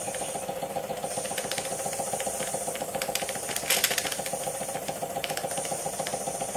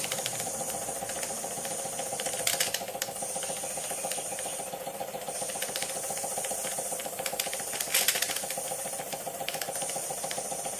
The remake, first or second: second